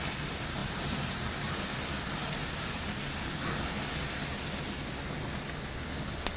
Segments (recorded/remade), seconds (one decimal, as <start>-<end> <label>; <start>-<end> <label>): 0.0-0.6 recorded; 0.6-1.3 remade; 1.3-2.4 recorded; 2.4-3.0 remade; 3.0-6.4 recorded